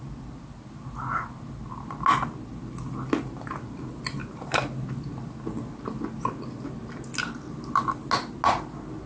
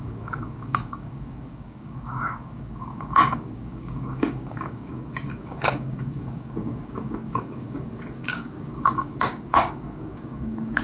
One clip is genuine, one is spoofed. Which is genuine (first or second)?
first